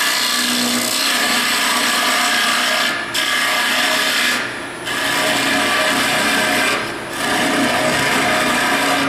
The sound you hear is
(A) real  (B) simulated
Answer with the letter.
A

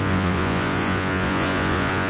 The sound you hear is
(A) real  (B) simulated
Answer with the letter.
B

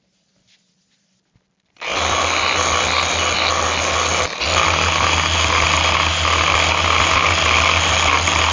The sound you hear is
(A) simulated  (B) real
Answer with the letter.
B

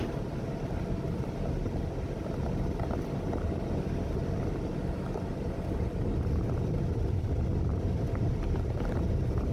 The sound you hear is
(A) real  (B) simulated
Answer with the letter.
A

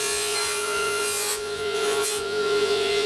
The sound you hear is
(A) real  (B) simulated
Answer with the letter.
B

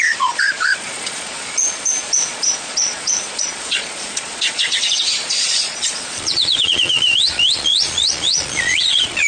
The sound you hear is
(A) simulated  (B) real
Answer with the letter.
A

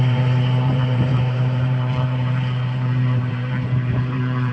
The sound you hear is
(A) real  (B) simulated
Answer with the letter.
B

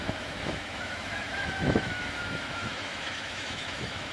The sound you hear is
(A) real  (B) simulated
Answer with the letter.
B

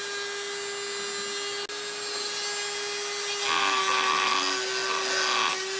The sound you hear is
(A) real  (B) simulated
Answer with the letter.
A